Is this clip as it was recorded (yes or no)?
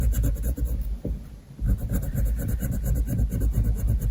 yes